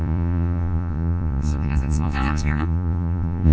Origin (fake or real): fake